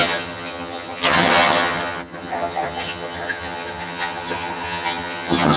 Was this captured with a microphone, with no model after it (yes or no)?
no